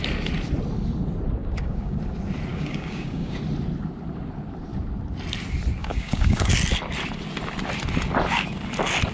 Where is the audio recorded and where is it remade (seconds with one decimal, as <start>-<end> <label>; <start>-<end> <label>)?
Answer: 0.0-1.4 recorded; 1.4-2.0 remade; 2.0-2.5 recorded; 2.5-3.4 remade; 3.4-5.8 recorded; 5.8-6.5 remade; 6.5-9.1 recorded